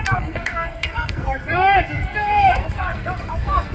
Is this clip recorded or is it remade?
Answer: remade